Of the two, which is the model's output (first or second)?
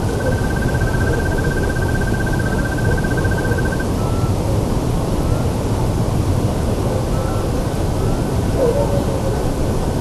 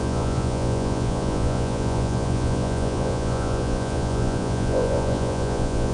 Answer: second